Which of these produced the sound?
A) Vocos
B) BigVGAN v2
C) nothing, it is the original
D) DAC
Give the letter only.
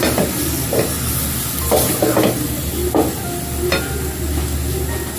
C